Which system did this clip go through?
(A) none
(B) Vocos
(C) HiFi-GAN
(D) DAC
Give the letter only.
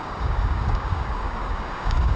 D